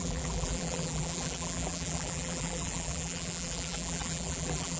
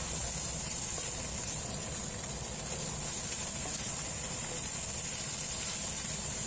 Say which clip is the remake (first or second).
first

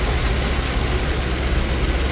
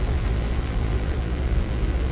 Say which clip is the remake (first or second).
second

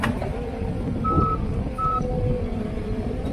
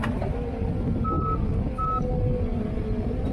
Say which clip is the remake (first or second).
first